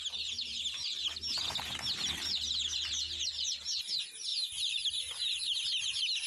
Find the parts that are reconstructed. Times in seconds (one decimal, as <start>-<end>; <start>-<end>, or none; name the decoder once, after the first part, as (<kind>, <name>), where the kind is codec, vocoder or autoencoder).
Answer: 4.3-4.8 (vocoder, BigVGAN v2)